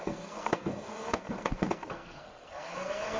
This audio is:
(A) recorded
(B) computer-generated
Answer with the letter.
B